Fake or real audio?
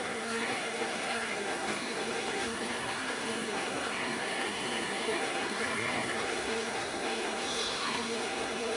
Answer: fake